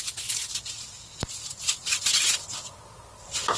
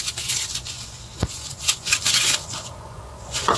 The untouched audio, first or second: first